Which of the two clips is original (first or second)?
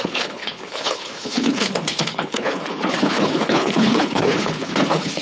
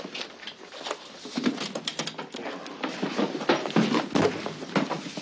second